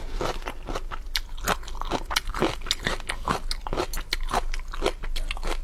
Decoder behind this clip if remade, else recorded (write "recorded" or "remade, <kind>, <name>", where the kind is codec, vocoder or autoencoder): recorded